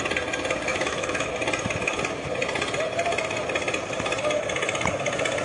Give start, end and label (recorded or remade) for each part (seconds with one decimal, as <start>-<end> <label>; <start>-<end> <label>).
0.0-0.7 recorded; 0.7-1.3 remade; 1.3-5.4 recorded